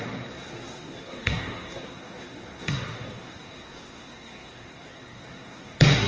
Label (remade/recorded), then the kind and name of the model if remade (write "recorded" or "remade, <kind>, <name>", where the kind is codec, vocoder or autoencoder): remade, codec, SNAC